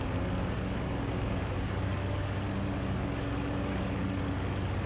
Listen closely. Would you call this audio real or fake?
fake